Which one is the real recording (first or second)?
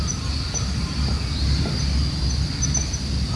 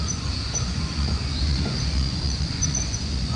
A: first